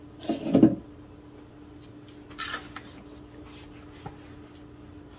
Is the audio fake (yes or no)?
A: no